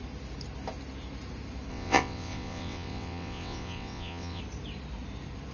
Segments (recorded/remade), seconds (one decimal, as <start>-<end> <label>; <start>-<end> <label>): 0.0-1.7 recorded; 1.7-4.4 remade; 4.4-5.5 recorded